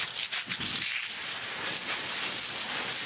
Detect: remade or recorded recorded